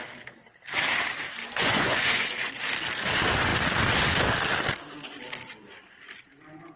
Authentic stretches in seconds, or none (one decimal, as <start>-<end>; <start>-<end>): 0.0-1.4; 2.5-6.8